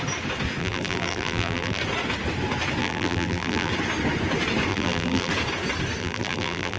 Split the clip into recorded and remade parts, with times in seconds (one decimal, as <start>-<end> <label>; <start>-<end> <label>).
0.0-0.6 recorded; 0.6-1.8 remade; 1.8-2.8 recorded; 2.8-3.7 remade; 3.7-4.7 recorded; 4.7-5.3 remade; 5.3-6.0 recorded; 6.0-6.8 remade